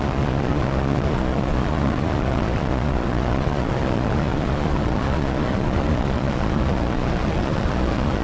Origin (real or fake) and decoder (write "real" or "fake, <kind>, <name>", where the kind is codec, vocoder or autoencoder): fake, vocoder, Vocos